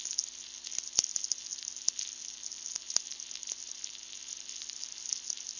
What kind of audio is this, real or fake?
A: real